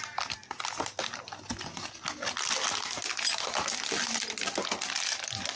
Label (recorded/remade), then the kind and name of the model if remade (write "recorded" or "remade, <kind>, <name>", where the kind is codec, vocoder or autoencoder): recorded